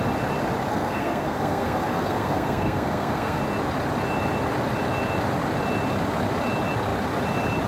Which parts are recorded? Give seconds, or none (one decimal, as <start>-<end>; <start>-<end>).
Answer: 0.0-0.7; 3.4-7.7